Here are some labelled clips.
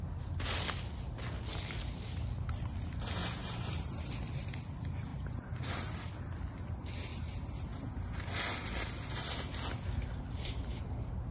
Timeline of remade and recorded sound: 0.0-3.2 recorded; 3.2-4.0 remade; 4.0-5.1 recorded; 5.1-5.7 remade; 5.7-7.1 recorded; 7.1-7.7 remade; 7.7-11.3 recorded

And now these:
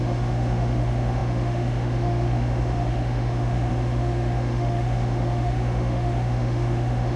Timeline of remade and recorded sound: 0.0-7.2 remade

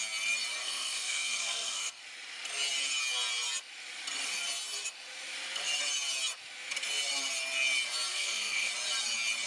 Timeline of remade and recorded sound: 0.0-0.6 recorded; 0.6-2.0 remade; 2.0-8.1 recorded; 8.1-8.7 remade; 8.7-9.5 recorded

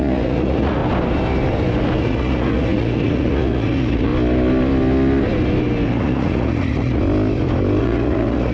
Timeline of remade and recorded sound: 0.0-0.8 remade; 0.8-2.0 recorded; 2.0-4.1 remade; 4.1-5.9 recorded; 5.9-7.0 remade; 7.0-7.8 recorded; 7.8-8.5 remade

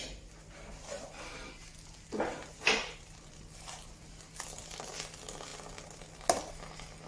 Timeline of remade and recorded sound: 0.0-7.1 recorded

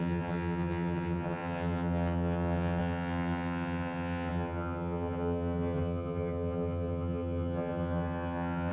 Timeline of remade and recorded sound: 0.0-8.7 remade